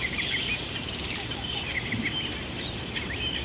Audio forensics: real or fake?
fake